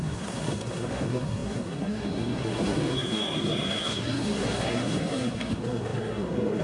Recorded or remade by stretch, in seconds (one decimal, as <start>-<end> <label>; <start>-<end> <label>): 0.0-6.6 remade